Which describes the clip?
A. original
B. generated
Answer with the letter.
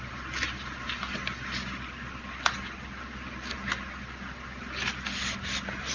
A